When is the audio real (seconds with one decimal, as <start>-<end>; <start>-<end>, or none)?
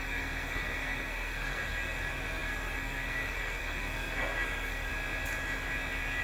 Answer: 4.9-6.2